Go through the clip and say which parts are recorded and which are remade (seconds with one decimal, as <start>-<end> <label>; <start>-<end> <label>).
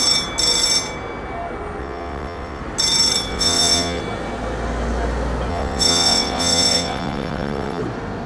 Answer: 0.0-1.8 recorded; 1.8-2.6 remade; 2.6-3.3 recorded; 3.3-4.0 remade; 4.0-5.5 recorded; 5.5-7.8 remade; 7.8-8.3 recorded